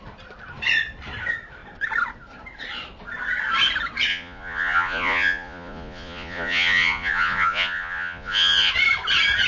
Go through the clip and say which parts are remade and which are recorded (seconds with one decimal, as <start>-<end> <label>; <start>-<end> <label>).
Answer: 0.0-4.1 recorded; 4.1-8.7 remade; 8.7-9.5 recorded